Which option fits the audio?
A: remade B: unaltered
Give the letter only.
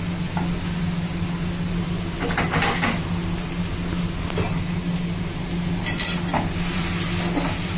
B